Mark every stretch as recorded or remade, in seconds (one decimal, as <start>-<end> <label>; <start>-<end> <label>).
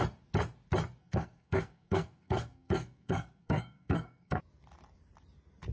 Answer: 0.0-1.0 recorded; 1.0-4.4 remade; 4.4-5.7 recorded